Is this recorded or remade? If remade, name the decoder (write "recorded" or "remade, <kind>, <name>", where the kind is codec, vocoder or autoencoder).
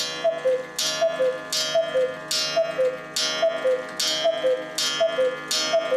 recorded